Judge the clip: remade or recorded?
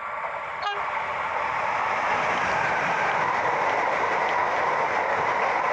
recorded